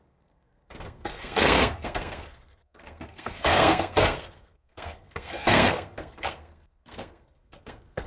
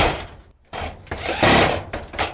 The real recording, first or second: second